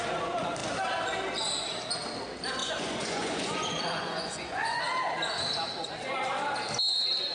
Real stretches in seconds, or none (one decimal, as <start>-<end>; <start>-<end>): 0.0-2.6; 4.8-7.3